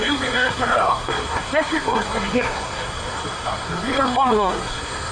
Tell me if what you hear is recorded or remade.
remade